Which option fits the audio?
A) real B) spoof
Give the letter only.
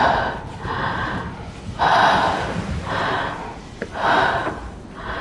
A